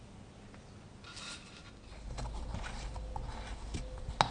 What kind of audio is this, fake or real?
real